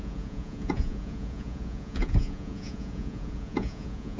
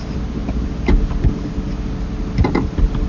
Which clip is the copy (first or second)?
first